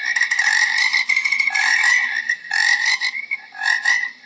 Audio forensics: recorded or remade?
remade